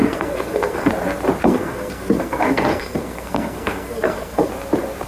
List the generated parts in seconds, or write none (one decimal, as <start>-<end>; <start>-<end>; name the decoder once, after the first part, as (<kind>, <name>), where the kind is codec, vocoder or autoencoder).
0.0-0.9 (codec, SNAC); 1.4-4.5